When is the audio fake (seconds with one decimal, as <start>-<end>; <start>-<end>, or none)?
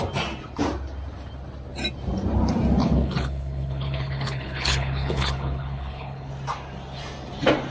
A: 2.8-6.3